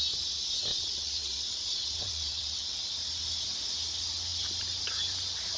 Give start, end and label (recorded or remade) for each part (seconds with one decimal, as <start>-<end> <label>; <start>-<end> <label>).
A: 0.0-0.7 recorded; 0.7-2.9 remade; 2.9-5.6 recorded